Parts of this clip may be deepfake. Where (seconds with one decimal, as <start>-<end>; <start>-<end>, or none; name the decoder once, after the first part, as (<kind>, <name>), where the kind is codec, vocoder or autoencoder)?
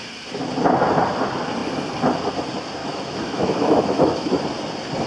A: 2.8-4.4 (autoencoder, DAC-VAE)